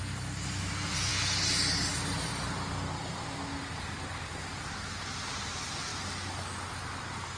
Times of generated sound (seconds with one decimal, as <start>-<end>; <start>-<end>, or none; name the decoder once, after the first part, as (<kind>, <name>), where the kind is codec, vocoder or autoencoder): none